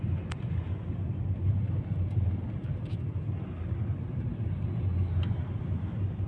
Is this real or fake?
real